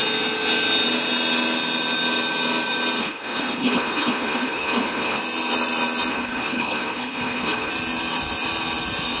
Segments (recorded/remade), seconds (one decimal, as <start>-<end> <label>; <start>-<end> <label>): 0.0-3.0 recorded; 3.0-5.2 remade; 5.2-6.1 recorded; 6.1-7.7 remade; 7.7-9.2 recorded